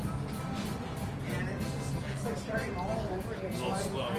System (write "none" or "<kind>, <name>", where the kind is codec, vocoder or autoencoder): none